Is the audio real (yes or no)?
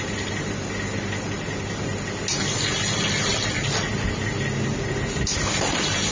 yes